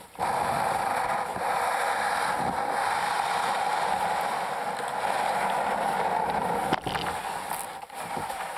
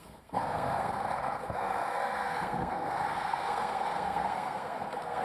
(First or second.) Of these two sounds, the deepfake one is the second